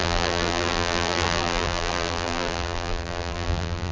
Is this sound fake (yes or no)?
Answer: yes